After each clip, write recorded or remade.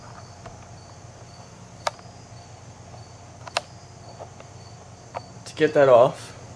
recorded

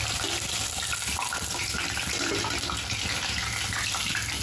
recorded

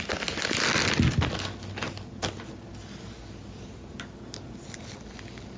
recorded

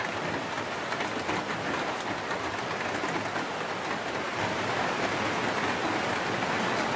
recorded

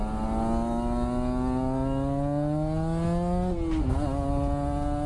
recorded